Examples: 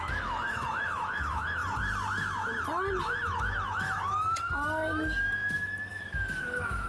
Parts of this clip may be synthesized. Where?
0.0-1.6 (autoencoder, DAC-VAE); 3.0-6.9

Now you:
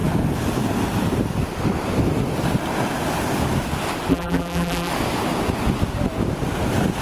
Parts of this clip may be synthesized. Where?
4.1-4.9 (vocoder, BigVGAN v2)

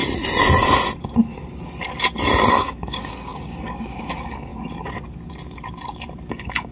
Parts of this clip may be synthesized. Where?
2.5-4.5 (codec, DAC); 6.3-6.7

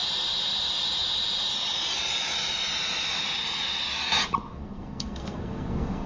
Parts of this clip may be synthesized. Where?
4.5-6.1 (codec, SNAC)

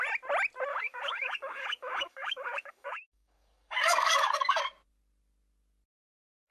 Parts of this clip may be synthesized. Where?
0.7-4.6 (codec, DAC)